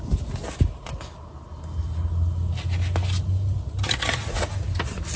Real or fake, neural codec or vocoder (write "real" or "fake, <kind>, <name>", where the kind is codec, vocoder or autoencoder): real